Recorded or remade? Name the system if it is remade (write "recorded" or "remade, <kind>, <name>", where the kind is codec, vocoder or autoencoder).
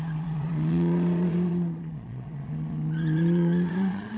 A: remade, vocoder, Vocos